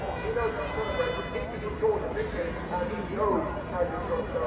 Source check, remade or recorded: recorded